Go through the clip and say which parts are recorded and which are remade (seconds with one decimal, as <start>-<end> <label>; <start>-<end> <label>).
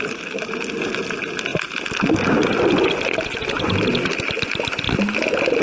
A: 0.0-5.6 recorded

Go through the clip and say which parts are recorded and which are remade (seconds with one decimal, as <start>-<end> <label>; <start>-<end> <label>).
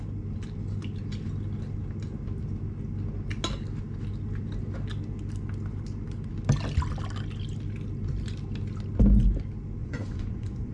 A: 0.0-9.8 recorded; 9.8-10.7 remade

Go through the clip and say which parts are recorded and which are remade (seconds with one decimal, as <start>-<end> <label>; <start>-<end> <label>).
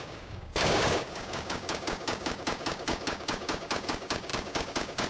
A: 0.0-5.1 remade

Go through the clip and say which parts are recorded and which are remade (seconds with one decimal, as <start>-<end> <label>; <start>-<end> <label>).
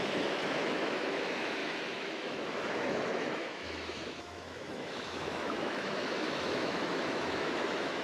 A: 0.0-8.0 remade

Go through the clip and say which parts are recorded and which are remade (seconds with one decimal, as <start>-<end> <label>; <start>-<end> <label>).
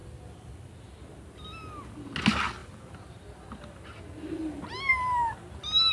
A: 0.0-5.9 recorded